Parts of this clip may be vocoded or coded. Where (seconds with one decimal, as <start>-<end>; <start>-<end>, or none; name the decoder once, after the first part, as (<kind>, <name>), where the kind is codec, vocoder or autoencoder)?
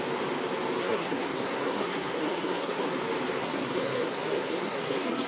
0.8-2.9 (codec, SNAC); 3.4-5.3